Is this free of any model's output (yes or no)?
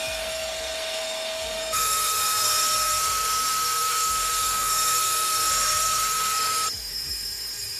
no